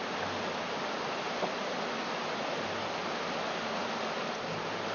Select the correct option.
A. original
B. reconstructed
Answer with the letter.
A